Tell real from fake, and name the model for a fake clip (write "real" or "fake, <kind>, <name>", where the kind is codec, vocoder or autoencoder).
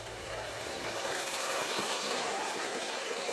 fake, codec, SNAC